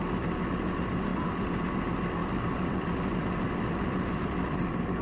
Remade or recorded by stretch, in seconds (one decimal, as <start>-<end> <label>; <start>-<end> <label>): 0.0-1.1 recorded; 1.1-1.6 remade; 1.6-2.2 recorded; 2.2-4.6 remade; 4.6-5.0 recorded